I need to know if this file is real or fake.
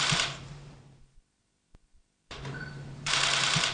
fake